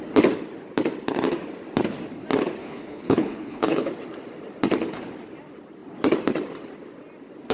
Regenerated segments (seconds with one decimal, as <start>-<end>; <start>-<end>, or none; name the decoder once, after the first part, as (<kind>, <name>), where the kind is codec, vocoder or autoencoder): 2.6-3.9 (codec, HILCodec)